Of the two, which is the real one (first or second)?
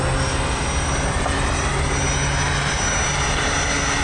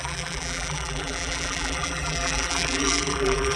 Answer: first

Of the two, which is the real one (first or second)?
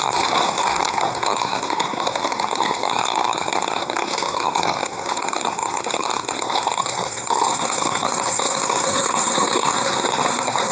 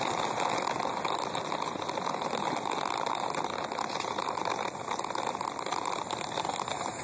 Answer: second